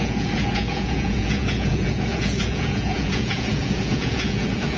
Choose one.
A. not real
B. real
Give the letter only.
A